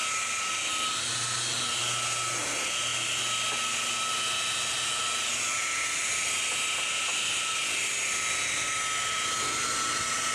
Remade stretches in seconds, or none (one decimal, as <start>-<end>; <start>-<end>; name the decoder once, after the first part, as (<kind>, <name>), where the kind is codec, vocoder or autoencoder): none